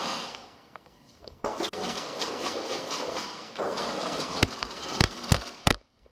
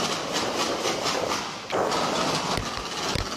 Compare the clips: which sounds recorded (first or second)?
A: second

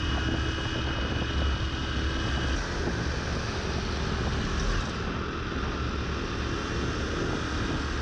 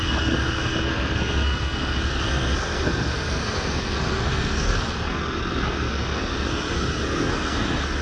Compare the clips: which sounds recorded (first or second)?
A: first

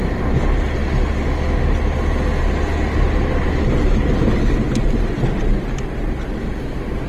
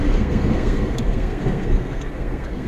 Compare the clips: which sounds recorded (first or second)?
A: first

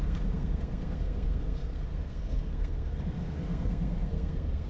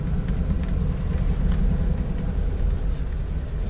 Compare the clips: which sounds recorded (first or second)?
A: second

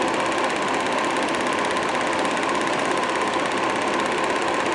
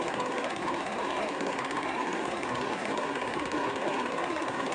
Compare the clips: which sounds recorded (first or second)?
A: first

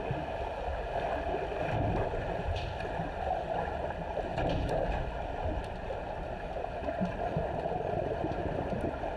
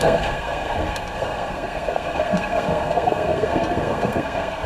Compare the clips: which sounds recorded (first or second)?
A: first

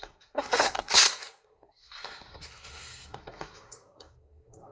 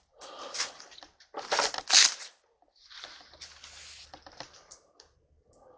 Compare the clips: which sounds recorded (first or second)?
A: second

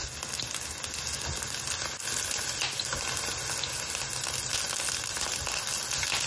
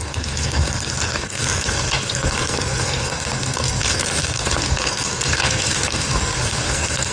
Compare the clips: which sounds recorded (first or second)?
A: first